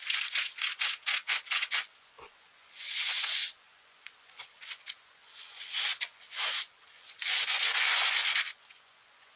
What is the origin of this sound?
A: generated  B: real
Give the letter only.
A